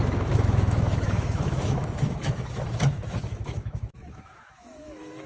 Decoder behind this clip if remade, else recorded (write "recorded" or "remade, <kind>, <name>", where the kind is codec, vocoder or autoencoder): remade, autoencoder, DAC-VAE